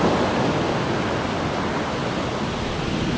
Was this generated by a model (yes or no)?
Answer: no